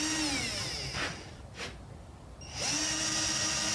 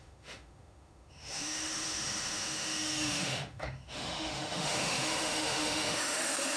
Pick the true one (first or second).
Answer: first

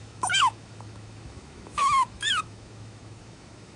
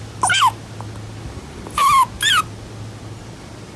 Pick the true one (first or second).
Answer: second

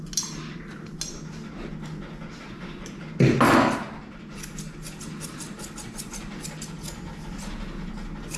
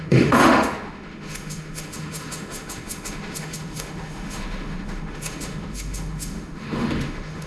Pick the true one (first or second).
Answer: first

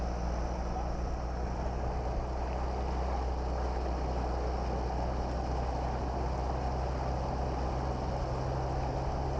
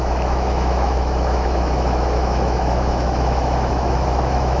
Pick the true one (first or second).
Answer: first